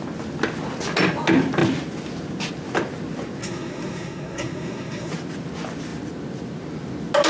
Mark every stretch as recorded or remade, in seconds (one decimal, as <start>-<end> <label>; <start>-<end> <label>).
0.0-3.4 recorded; 3.4-5.1 remade; 5.1-7.3 recorded